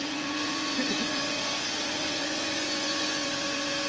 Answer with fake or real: fake